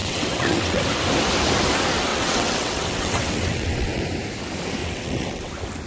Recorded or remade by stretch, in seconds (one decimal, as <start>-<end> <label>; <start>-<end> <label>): 0.0-0.8 remade; 0.8-2.1 recorded; 2.1-4.0 remade; 4.0-4.8 recorded; 4.8-5.5 remade; 5.5-5.9 recorded

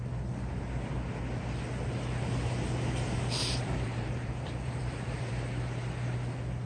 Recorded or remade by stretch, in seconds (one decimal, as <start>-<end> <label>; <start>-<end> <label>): 0.0-3.4 recorded; 3.4-5.3 remade; 5.3-6.7 recorded

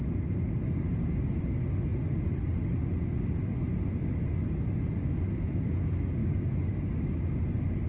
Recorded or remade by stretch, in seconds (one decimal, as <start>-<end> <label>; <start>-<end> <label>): 0.0-6.2 recorded; 6.2-6.9 remade; 6.9-7.9 recorded

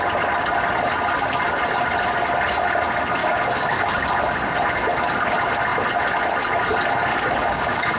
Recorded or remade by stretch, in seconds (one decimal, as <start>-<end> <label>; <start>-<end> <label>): 0.0-3.2 recorded; 3.2-4.1 remade; 4.1-7.1 recorded; 7.1-8.0 remade

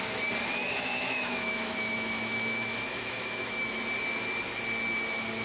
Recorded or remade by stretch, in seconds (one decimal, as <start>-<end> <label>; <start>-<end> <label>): 0.0-0.6 recorded; 0.6-3.8 remade; 3.8-5.4 recorded

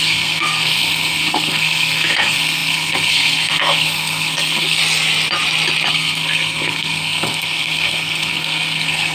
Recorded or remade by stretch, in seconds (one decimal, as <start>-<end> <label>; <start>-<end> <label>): 0.0-4.8 remade; 4.8-5.9 recorded; 5.9-9.1 remade